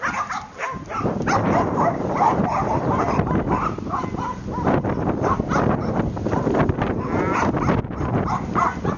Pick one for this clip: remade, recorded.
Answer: recorded